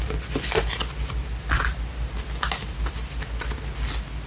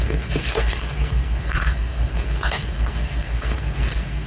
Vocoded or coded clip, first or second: second